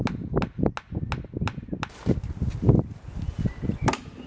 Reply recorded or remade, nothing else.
recorded